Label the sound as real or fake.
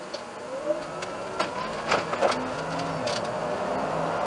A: real